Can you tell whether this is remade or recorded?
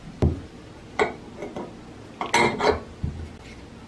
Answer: recorded